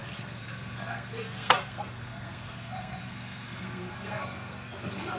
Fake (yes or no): yes